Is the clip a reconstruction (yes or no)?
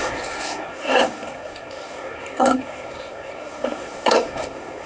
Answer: yes